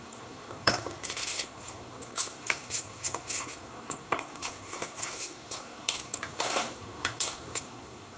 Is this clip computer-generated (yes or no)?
yes